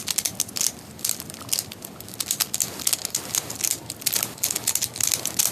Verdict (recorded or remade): recorded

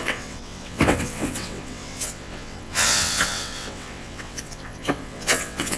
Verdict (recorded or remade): remade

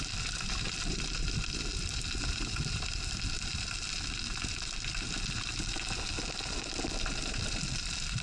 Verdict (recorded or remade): recorded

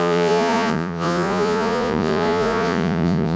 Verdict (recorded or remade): remade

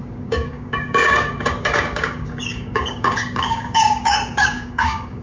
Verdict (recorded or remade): remade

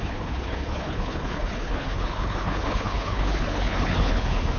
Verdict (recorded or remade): remade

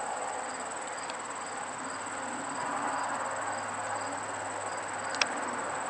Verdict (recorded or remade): recorded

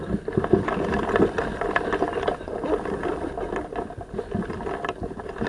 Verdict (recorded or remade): recorded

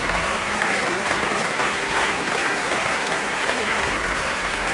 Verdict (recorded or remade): remade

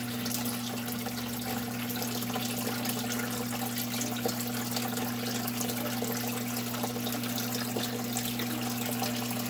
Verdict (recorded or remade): recorded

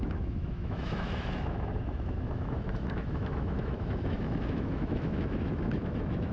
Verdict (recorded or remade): remade